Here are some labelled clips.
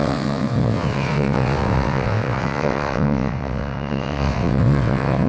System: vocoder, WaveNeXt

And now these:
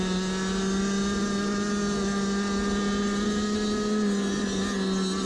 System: none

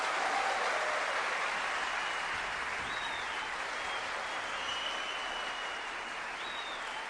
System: none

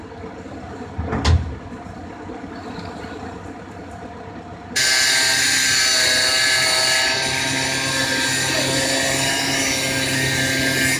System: none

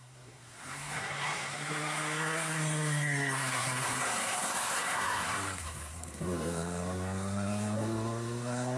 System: codec, SNAC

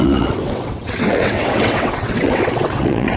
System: vocoder, WaveNeXt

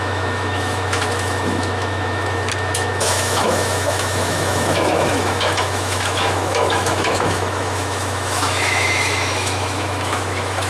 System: autoencoder, DAC-VAE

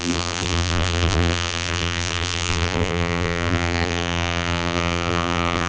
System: vocoder, BigVGAN v2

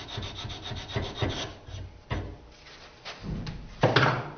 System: none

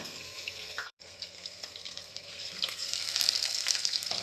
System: codec, SNAC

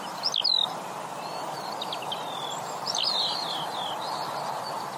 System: none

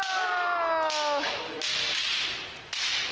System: none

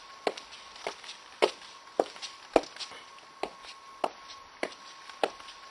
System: none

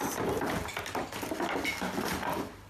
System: none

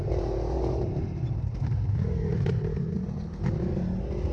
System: none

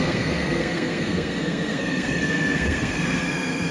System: codec, SNAC